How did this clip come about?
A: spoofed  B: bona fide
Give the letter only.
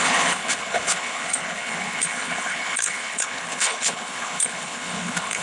A